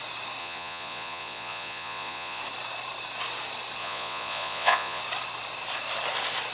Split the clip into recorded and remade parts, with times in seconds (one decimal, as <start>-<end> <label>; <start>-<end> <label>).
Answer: 0.0-0.4 recorded; 0.4-2.4 remade; 2.4-3.8 recorded; 3.8-5.0 remade; 5.0-6.5 recorded